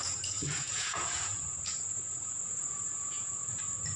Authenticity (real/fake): fake